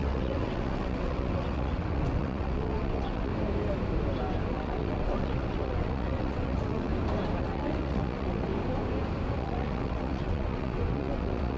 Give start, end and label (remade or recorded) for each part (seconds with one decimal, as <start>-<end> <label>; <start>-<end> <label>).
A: 0.0-3.3 remade; 3.3-4.5 recorded; 4.5-6.9 remade; 6.9-7.4 recorded; 7.4-8.5 remade; 8.5-9.3 recorded; 9.3-11.6 remade